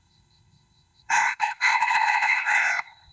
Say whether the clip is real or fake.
fake